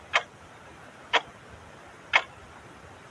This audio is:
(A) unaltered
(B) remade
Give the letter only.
A